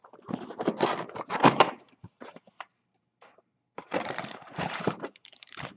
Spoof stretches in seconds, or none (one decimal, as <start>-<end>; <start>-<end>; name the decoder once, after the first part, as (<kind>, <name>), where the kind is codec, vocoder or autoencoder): 1.9-5.8 (vocoder, BigVGAN v2)